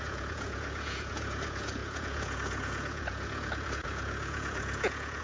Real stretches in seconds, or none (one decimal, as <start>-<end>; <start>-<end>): none